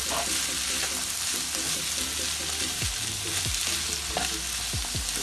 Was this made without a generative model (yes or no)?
yes